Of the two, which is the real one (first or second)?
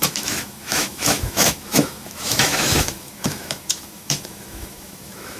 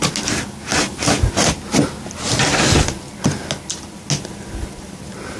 second